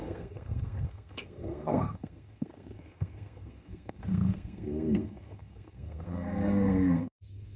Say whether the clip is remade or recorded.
remade